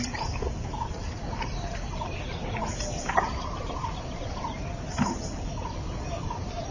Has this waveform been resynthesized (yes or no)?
no